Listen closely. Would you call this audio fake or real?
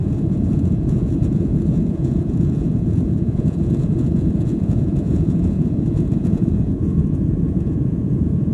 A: fake